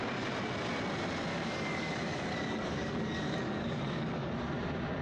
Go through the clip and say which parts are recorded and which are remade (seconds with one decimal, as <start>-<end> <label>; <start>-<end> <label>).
0.0-1.3 recorded; 1.3-4.3 remade; 4.3-5.0 recorded